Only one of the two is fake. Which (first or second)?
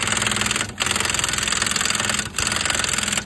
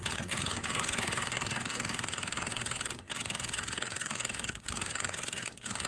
second